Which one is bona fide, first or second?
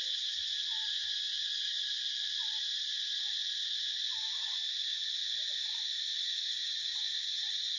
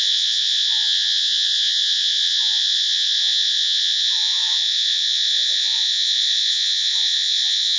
first